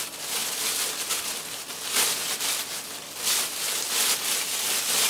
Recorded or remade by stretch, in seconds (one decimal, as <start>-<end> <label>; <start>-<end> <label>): 0.0-5.1 recorded